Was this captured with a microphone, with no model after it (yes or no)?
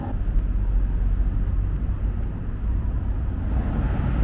yes